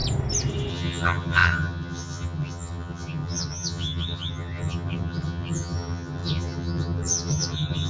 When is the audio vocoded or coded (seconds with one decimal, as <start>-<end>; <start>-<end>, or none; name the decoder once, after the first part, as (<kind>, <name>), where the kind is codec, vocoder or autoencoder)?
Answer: 0.7-7.9 (vocoder, HiFi-GAN)